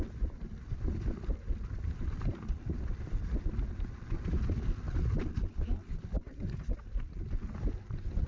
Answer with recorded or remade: recorded